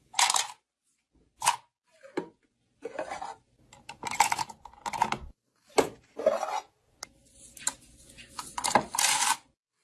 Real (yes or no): yes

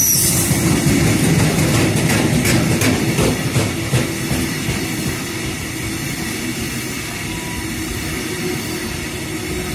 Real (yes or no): yes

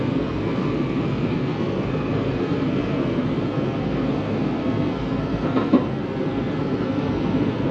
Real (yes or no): no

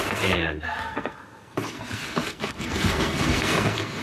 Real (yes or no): no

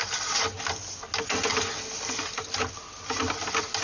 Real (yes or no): yes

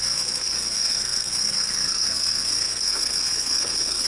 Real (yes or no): no